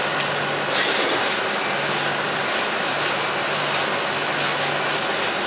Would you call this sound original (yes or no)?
yes